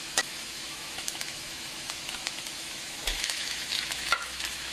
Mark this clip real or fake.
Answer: fake